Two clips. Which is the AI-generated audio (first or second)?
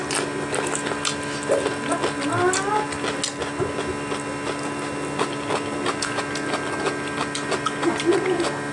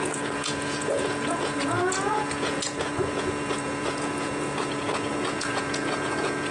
second